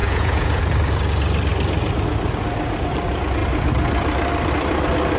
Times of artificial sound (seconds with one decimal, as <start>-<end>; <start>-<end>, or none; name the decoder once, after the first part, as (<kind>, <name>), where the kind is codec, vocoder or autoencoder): 0.0-0.6 (vocoder, Vocos)